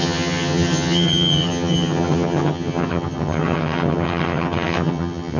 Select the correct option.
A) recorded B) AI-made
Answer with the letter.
B